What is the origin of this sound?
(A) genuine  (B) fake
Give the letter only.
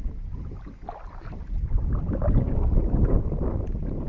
A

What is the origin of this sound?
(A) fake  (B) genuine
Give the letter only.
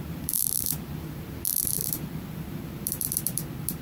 A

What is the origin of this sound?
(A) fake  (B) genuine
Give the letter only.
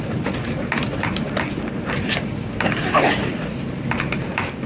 A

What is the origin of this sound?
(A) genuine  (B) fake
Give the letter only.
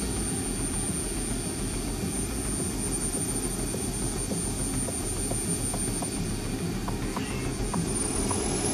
A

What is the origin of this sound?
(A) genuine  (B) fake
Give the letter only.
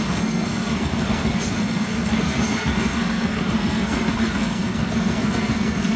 B